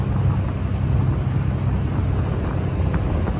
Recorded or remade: recorded